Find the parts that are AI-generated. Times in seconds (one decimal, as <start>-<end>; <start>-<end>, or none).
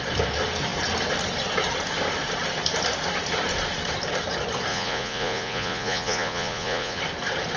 4.7-7.0